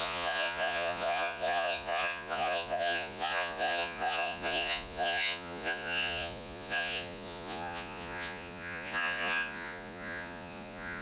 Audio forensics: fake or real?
fake